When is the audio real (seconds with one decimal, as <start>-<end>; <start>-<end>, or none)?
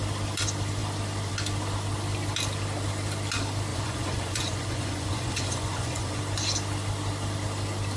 0.0-3.7; 6.2-8.0